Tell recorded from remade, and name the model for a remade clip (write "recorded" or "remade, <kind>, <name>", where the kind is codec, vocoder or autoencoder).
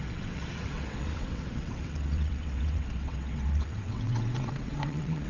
remade, vocoder, WaveNeXt